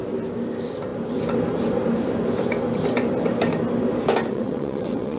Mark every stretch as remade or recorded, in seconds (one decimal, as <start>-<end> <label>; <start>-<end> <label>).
0.0-4.3 recorded; 4.3-5.2 remade